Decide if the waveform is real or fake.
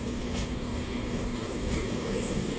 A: fake